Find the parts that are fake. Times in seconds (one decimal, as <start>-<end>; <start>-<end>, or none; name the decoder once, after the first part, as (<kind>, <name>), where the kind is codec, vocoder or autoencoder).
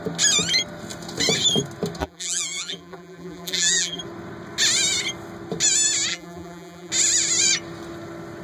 2.0-4.0 (vocoder, BigVGAN v2); 6.1-6.9